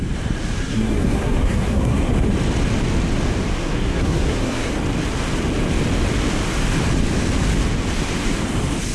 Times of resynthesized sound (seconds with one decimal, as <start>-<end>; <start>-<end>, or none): 0.6-2.1; 3.6-4.7